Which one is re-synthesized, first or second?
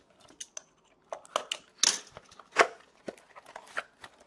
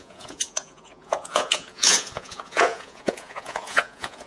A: second